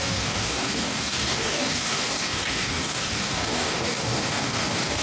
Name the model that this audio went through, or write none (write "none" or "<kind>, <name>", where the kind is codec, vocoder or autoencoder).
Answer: codec, DAC